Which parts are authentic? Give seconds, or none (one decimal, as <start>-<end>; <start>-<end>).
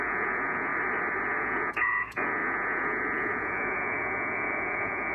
0.7-1.4